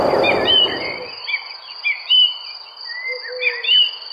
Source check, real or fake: real